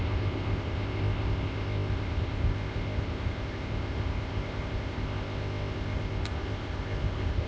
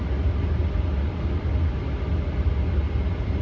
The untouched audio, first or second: second